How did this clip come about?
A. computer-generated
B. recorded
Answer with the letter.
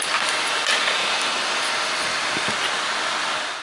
B